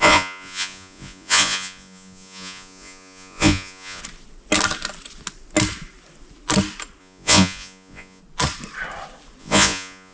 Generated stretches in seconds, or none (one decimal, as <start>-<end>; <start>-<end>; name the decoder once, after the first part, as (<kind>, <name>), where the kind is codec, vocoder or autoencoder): 0.0-4.0 (vocoder, Vocos); 7.0-8.2; 9.4-10.1